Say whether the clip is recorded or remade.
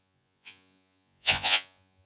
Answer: remade